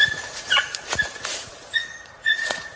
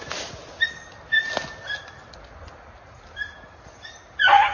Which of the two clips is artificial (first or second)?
first